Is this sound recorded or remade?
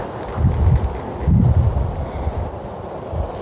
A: recorded